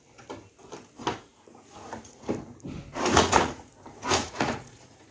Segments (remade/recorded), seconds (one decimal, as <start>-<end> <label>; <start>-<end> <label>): 0.0-1.5 recorded; 1.5-2.3 remade; 2.3-2.9 recorded; 2.9-3.7 remade; 3.7-4.2 recorded; 4.2-5.1 remade